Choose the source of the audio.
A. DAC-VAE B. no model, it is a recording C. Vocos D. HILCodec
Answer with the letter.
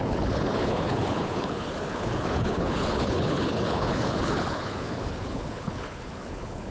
D